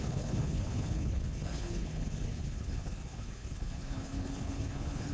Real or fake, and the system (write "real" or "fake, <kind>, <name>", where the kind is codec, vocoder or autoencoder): fake, codec, HILCodec